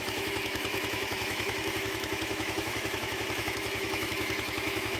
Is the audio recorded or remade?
remade